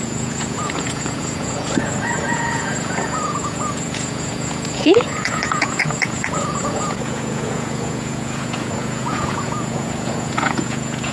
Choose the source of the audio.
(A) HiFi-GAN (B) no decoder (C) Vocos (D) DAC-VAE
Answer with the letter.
C